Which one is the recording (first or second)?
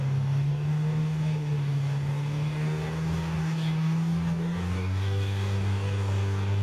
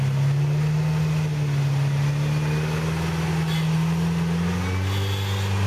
second